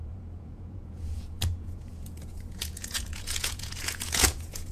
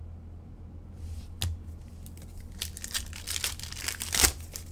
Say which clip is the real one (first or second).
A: second